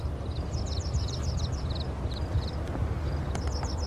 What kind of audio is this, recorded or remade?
recorded